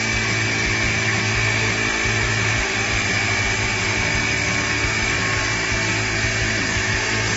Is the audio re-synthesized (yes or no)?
no